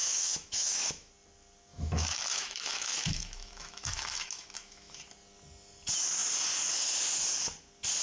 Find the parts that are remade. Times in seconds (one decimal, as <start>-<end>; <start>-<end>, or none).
0.0-1.1; 1.7-5.0

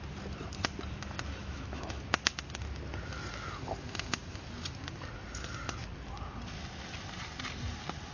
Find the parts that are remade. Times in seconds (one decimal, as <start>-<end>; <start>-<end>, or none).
1.4-2.0

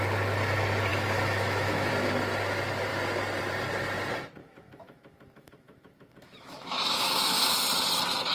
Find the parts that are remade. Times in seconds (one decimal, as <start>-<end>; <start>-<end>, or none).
0.9-1.9; 4.4-7.4

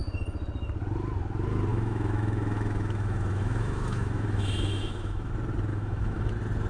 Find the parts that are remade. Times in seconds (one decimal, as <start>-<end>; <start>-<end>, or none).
1.7-5.3; 5.7-6.3

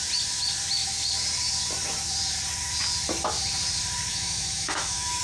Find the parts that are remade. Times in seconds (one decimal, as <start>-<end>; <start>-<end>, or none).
4.1-5.2